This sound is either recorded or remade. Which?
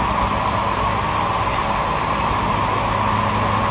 recorded